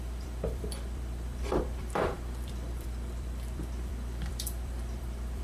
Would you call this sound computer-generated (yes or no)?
yes